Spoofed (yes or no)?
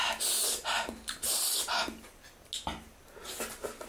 no